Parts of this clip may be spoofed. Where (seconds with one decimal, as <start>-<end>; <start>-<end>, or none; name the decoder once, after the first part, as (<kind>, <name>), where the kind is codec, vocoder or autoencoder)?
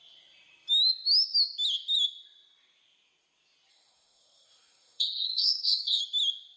3.7-6.0 (codec, SNAC)